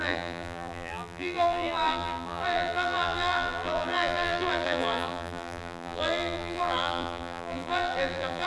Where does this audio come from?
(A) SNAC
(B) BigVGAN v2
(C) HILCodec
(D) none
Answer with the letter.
B